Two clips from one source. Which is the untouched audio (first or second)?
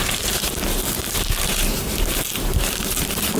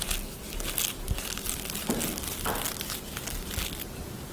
second